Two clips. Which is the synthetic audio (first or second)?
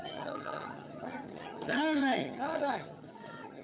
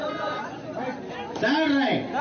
first